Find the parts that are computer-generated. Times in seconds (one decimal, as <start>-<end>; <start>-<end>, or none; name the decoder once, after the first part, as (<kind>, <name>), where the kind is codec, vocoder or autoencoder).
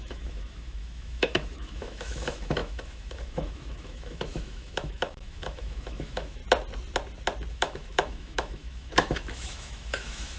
0.0-6.4 (autoencoder, DAC-VAE); 7.5-10.4